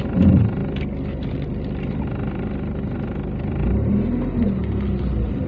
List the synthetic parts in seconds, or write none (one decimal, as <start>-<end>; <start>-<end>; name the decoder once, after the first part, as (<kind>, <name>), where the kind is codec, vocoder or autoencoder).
none

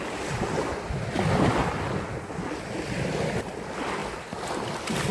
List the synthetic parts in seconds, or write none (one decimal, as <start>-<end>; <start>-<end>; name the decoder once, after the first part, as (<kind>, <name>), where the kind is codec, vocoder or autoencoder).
none